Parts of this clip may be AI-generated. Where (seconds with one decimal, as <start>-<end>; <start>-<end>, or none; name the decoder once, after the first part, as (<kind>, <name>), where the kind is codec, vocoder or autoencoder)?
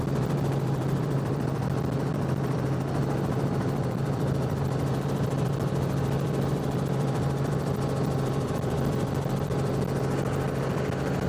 0.0-9.7 (vocoder, BigVGAN v2)